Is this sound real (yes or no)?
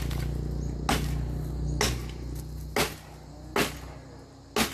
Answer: yes